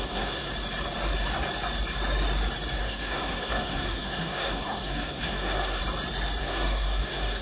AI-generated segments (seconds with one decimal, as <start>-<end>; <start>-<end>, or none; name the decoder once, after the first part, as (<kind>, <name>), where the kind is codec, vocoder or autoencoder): 0.0-0.5 (codec, SNAC); 2.8-5.8; 6.4-7.4